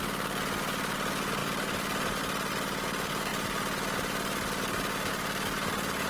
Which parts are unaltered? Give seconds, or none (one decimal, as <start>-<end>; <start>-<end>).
0.0-6.1